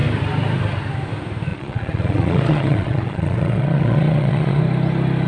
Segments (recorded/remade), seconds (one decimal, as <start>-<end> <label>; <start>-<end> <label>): 0.0-1.5 recorded; 1.5-4.6 remade; 4.6-5.3 recorded